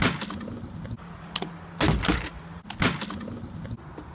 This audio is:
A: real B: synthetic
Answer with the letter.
A